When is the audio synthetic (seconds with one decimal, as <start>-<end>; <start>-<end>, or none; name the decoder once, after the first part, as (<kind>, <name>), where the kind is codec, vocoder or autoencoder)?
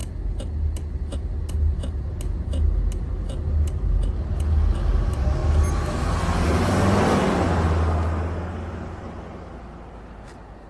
none